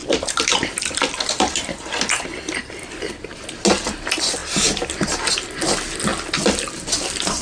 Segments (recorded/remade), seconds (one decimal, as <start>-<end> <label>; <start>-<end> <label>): 0.0-3.4 remade; 3.4-4.4 recorded; 4.4-5.0 remade; 5.0-7.4 recorded